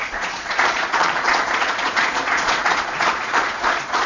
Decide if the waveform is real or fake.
fake